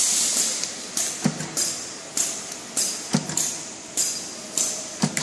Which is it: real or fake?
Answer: real